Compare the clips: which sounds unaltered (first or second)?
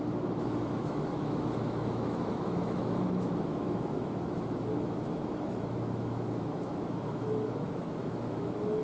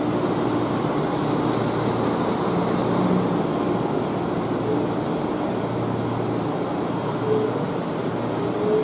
second